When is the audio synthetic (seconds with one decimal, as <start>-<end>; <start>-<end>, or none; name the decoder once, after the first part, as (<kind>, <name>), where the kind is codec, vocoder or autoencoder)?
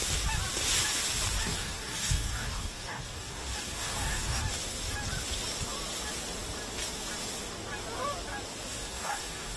1.5-4.4 (codec, DAC); 8.7-9.6